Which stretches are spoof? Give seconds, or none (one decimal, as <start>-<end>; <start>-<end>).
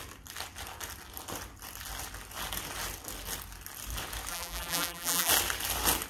4.3-5.3